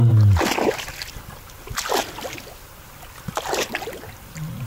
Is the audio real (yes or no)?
yes